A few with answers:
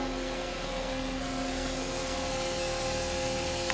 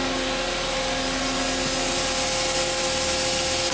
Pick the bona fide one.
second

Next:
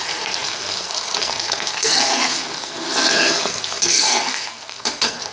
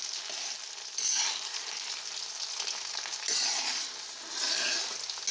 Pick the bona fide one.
second